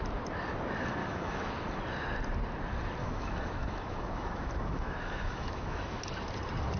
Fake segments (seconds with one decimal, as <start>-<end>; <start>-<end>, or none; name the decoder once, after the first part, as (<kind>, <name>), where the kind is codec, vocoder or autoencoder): 1.0-1.5 (autoencoder, DAC-VAE); 3.0-6.0